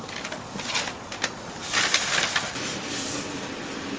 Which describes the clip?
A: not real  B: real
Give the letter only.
B